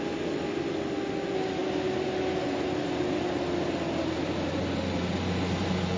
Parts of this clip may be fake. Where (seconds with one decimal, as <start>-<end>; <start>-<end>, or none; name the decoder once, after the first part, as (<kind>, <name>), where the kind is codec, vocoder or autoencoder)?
none